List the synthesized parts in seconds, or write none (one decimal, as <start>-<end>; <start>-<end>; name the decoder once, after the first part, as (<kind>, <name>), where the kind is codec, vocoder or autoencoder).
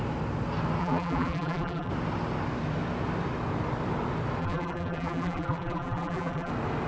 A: 0.8-1.9 (vocoder, BigVGAN v2); 4.4-6.5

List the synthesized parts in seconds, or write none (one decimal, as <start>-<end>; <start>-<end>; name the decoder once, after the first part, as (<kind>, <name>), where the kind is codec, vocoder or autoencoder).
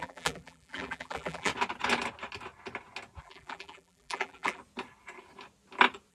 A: 0.0-1.5 (vocoder, BigVGAN v2); 3.2-4.6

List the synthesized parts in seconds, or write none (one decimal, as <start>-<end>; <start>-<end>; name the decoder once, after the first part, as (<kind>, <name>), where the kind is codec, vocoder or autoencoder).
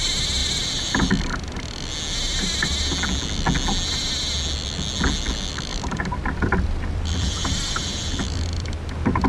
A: 0.4-1.1 (vocoder, BigVGAN v2); 5.7-8.7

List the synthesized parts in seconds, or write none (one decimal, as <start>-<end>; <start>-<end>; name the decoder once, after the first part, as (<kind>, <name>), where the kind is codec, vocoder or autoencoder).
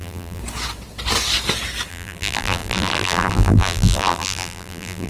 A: 0.0-0.4 (vocoder, BigVGAN v2); 1.9-5.1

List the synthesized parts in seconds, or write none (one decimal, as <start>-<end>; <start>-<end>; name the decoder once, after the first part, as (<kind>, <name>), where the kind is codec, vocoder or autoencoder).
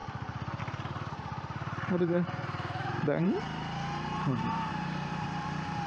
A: 0.6-5.9 (vocoder, BigVGAN v2)